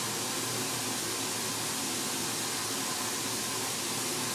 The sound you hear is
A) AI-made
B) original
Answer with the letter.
B